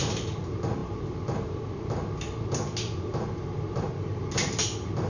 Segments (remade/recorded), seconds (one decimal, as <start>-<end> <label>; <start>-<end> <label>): 0.0-5.1 recorded